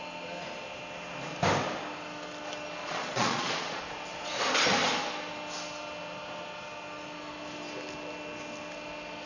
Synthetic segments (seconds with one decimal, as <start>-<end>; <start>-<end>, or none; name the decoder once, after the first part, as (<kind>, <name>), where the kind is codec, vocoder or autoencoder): 2.8-3.8 (vocoder, Vocos)